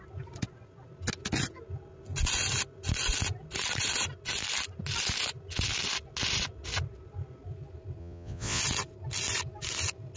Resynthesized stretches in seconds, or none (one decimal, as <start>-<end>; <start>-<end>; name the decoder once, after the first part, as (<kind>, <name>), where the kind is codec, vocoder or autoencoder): 8.0-8.6 (vocoder, Vocos)